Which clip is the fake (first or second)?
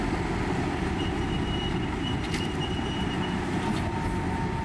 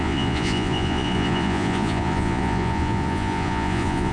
second